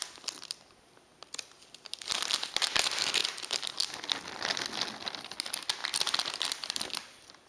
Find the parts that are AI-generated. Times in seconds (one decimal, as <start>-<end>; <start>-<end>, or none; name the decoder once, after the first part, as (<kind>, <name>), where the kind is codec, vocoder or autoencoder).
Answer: 1.1-2.0 (vocoder, BigVGAN v2); 5.8-7.5